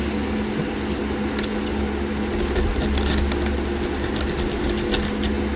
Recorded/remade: recorded